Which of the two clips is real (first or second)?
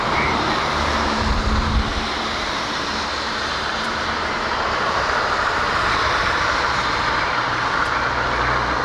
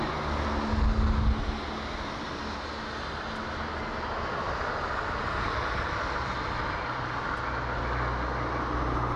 second